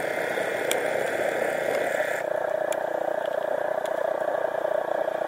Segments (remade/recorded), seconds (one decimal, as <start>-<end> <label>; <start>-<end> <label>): 0.0-5.3 recorded